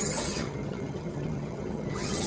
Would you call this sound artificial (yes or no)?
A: yes